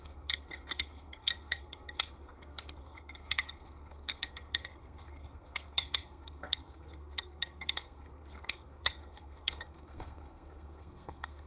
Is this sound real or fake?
fake